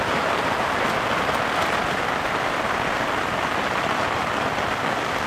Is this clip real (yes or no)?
yes